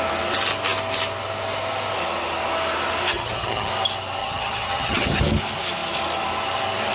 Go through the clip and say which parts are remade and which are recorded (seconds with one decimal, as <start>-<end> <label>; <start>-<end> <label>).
0.0-3.1 recorded; 3.1-3.7 remade; 3.7-4.2 recorded; 4.2-5.2 remade; 5.2-6.9 recorded